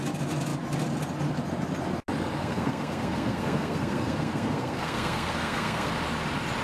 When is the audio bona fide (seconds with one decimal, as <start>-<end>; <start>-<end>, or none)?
0.0-2.4; 5.9-6.6